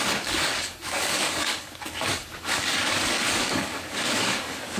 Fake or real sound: fake